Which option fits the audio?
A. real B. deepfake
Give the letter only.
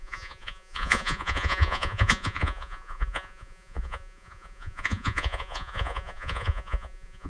B